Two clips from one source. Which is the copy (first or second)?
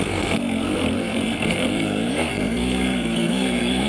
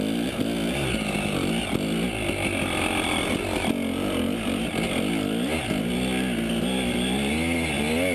first